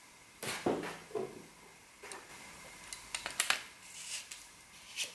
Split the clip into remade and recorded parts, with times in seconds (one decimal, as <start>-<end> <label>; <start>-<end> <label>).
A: 0.0-5.1 recorded